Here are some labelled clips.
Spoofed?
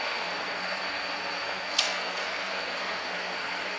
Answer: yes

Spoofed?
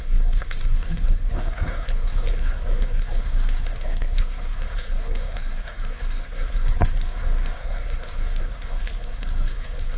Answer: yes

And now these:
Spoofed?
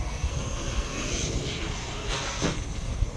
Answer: yes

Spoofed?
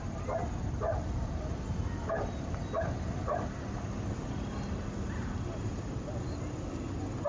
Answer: no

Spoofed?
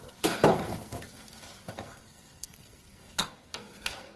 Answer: yes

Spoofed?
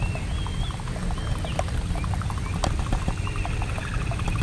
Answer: no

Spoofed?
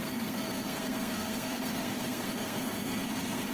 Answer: yes